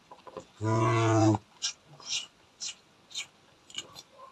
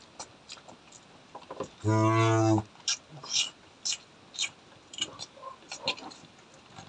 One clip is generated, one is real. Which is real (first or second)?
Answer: second